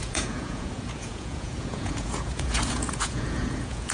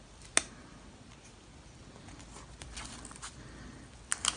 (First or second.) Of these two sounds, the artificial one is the first